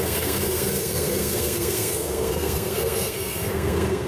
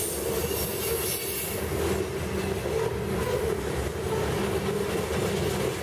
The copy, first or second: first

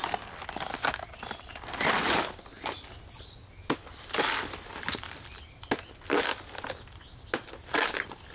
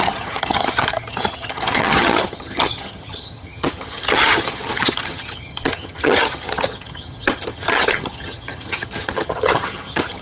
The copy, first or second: second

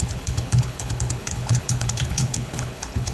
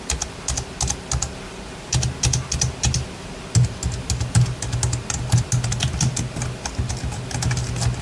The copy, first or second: first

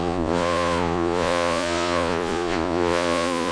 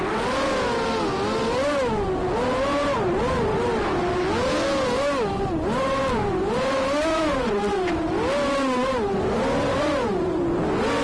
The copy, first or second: first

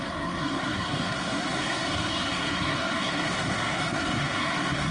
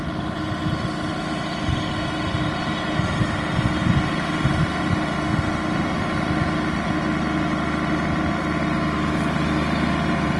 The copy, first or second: first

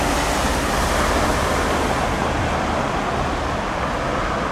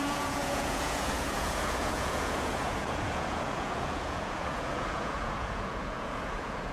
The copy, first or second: second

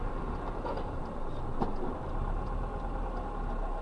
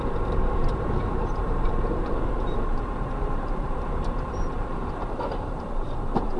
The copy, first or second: second